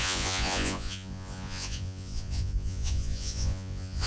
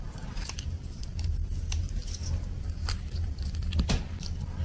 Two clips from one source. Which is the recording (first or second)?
second